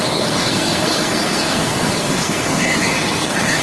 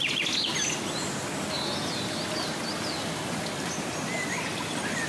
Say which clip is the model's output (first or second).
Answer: first